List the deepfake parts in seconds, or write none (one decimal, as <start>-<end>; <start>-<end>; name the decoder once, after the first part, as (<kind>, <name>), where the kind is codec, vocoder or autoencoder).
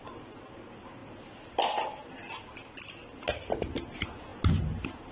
none